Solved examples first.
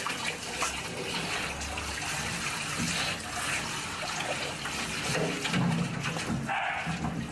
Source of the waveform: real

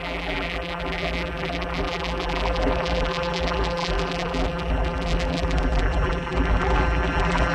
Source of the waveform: fake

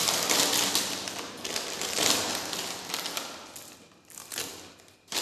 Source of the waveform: real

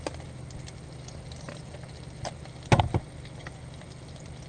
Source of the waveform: real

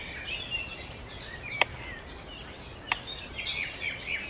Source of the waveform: real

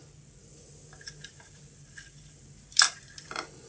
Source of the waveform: real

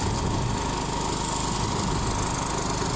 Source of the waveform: real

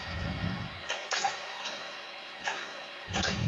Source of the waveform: fake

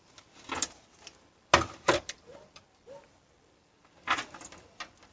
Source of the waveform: real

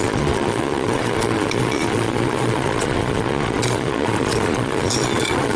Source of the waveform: fake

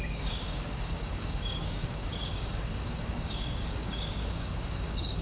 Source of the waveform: fake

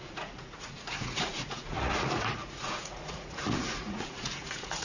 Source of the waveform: fake